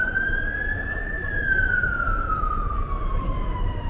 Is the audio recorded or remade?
remade